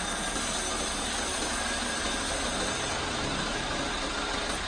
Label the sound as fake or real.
real